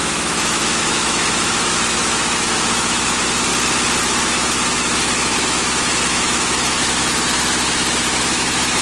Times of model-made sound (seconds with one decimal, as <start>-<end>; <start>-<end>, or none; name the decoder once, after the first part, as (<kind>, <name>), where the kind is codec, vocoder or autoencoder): 0.0-3.5 (autoencoder, DAC-VAE); 4.0-8.8